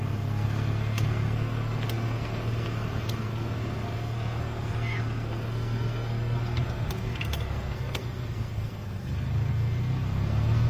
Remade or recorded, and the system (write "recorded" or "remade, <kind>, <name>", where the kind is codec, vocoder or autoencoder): remade, codec, SNAC